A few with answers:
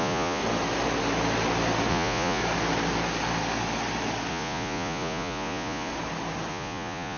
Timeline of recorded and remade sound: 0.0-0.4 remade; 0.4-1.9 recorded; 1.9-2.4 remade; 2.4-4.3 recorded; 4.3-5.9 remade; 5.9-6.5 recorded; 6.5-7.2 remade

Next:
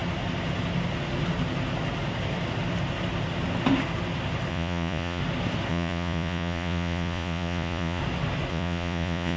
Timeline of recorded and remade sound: 0.0-4.5 recorded; 4.5-5.2 remade; 5.2-5.7 recorded; 5.7-8.0 remade; 8.0-8.5 recorded; 8.5-9.4 remade

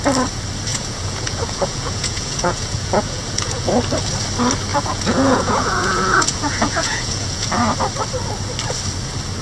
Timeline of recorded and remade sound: 0.0-0.7 recorded; 0.7-3.7 remade; 3.7-4.7 recorded; 4.7-7.5 remade; 7.5-9.4 recorded

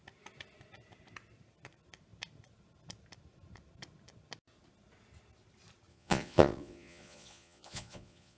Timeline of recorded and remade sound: 0.0-5.9 recorded; 5.9-8.4 remade